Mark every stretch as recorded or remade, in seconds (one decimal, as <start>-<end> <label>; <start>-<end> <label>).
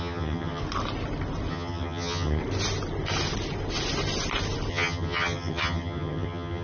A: 0.0-0.6 remade; 0.6-1.5 recorded; 1.5-2.4 remade; 2.4-4.7 recorded; 4.7-6.6 remade